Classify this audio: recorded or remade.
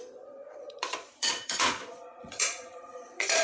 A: remade